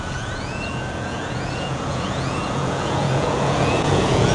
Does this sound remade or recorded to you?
remade